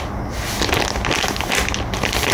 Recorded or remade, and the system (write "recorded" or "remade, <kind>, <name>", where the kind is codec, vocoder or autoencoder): recorded